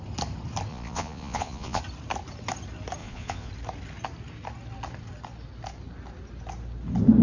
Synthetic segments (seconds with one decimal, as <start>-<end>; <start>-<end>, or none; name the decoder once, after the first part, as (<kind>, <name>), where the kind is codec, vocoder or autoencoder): 0.7-1.8 (vocoder, Vocos); 3.0-3.5